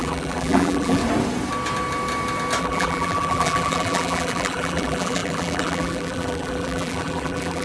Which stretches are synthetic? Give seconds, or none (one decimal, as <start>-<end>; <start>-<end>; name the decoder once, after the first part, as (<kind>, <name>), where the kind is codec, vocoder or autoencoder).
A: 0.0-1.0 (vocoder, BigVGAN v2); 2.6-7.6